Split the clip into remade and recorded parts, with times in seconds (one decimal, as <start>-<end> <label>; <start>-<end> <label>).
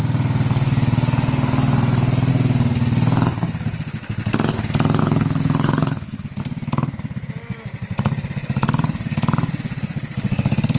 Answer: 0.0-5.0 recorded; 5.0-6.4 remade; 6.4-10.8 recorded